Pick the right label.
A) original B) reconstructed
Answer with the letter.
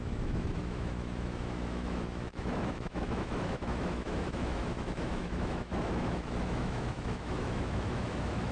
B